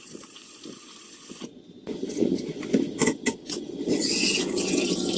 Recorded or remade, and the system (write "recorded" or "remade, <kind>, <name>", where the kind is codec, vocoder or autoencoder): remade, vocoder, Vocos